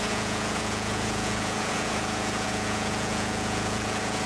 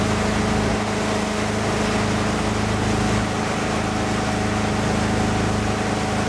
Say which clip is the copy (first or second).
first